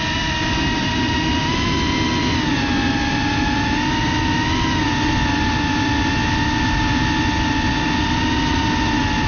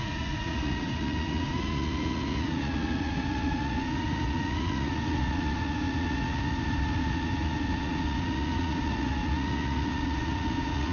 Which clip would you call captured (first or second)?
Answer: first